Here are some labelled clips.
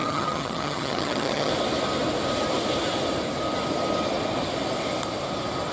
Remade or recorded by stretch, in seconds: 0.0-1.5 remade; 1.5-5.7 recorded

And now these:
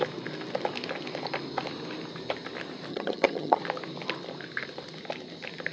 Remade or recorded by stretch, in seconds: 0.0-2.9 recorded; 2.9-3.6 remade; 3.6-5.7 recorded

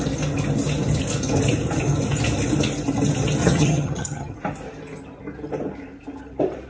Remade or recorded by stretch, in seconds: 0.0-3.4 recorded; 3.4-4.3 remade; 4.3-6.7 recorded

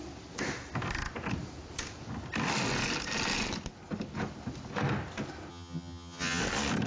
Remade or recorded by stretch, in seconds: 0.0-5.5 recorded; 5.5-6.4 remade; 6.4-6.9 recorded